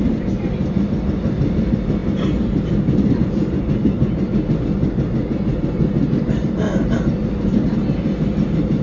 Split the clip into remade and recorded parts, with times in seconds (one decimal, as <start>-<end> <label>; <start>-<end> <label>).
0.0-8.8 recorded